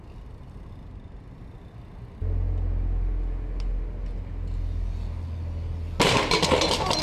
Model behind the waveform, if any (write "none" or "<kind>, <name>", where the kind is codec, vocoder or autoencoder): none